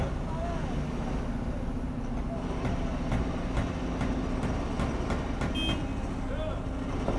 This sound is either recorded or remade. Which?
recorded